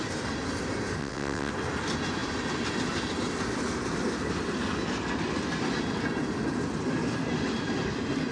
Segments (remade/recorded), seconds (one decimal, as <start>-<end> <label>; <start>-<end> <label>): 0.0-1.0 recorded; 1.0-1.5 remade; 1.5-8.3 recorded